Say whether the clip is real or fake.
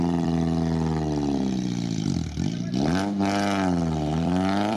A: fake